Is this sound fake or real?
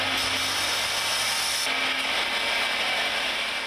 real